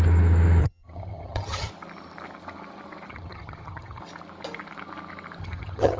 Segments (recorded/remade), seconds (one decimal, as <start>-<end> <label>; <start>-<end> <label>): 0.0-0.6 recorded; 0.6-1.7 remade; 1.7-3.1 recorded; 3.1-4.0 remade; 4.0-5.4 recorded; 5.4-6.0 remade